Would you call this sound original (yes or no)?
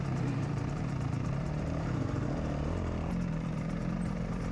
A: no